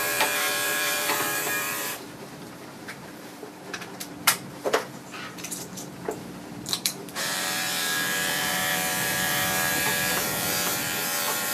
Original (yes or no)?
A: no